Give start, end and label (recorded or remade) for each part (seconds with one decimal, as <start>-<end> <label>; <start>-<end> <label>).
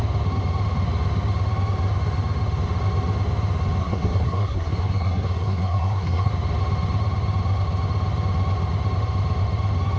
0.0-3.8 recorded; 3.8-6.3 remade; 6.3-10.0 recorded